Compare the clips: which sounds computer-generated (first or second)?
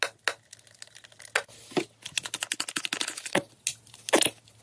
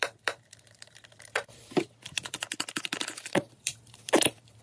second